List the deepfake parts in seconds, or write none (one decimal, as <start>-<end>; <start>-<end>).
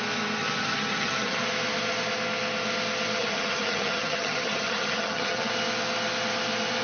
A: 0.4-1.4; 3.2-5.5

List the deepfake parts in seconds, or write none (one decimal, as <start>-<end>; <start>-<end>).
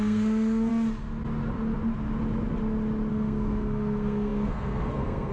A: 0.0-0.7; 3.1-5.3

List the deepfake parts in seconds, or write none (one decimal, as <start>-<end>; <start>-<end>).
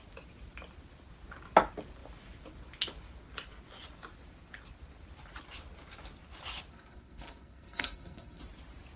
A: 6.7-8.4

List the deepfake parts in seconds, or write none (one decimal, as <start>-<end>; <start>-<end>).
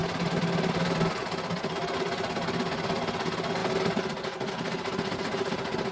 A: none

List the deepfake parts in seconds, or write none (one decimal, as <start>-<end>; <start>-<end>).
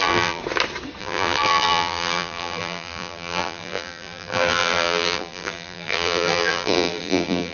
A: 0.0-0.4; 1.0-7.5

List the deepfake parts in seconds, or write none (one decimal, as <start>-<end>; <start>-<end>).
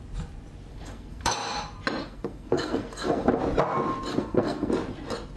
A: 0.7-1.3; 2.0-3.4; 4.1-4.7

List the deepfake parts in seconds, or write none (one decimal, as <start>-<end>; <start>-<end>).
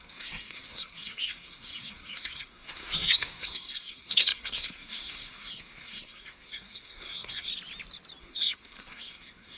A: 0.0-7.5; 8.2-9.6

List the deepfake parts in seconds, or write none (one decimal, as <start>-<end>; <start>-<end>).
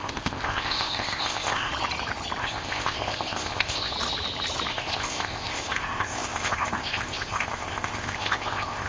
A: 0.0-1.7; 2.4-3.9; 4.7-8.9